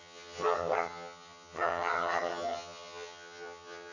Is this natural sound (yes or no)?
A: no